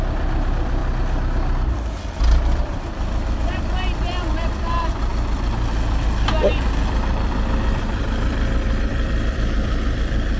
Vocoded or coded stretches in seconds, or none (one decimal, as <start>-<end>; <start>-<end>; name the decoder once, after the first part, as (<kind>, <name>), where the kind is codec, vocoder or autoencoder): 0.0-0.8 (vocoder, BigVGAN v2); 1.7-10.4